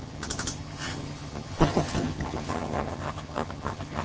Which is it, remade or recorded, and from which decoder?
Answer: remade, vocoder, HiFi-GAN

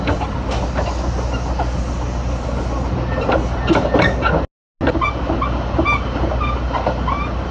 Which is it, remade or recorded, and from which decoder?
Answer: recorded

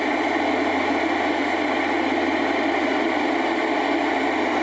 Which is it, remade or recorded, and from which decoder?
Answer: recorded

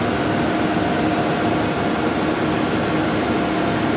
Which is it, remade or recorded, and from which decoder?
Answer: recorded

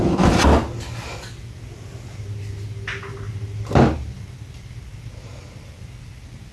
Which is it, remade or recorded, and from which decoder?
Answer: recorded